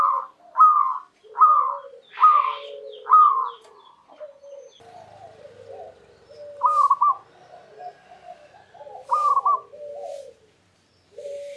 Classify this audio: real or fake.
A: real